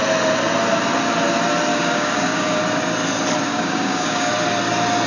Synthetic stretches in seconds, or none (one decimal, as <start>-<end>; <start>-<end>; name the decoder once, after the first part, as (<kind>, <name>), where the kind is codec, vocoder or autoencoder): 1.7-2.6 (codec, DAC); 3.5-4.3